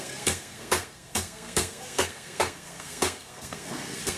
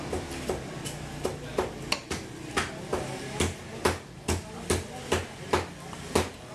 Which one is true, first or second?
second